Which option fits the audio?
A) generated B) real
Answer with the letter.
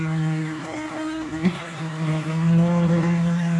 A